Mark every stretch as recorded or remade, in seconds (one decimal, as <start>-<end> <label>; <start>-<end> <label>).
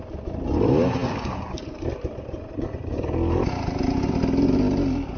0.0-5.2 recorded